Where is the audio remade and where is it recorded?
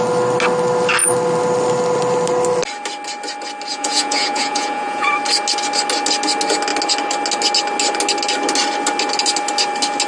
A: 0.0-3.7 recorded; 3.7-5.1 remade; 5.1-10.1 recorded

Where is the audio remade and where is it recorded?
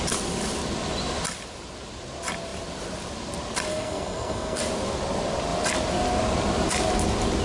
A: 0.0-3.7 recorded; 3.7-4.6 remade; 4.6-7.4 recorded